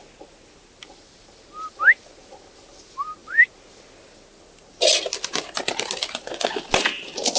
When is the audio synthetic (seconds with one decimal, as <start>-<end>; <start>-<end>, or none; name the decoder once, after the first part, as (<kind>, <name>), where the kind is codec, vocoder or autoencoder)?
none